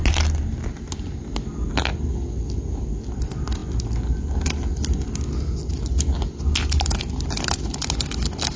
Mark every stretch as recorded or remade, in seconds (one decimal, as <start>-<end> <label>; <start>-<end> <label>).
0.0-8.6 recorded